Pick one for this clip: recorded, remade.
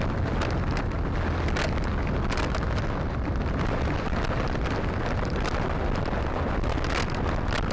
recorded